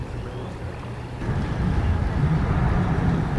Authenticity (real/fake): real